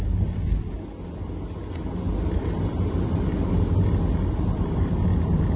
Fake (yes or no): no